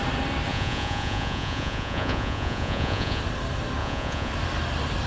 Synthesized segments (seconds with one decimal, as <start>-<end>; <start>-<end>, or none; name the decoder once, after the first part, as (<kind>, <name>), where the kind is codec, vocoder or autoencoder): 0.5-3.2 (vocoder, Vocos); 3.8-4.3